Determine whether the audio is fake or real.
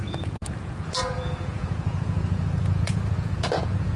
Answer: fake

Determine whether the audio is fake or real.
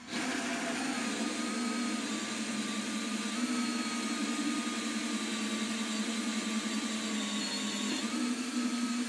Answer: real